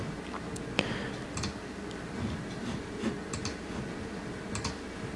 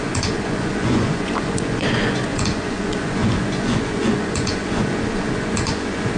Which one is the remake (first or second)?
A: second